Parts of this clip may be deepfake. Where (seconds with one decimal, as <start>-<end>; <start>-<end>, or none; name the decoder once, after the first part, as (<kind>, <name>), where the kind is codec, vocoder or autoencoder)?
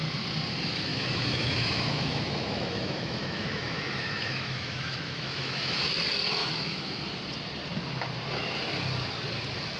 0.9-6.0 (autoencoder, DAC-VAE); 6.4-6.9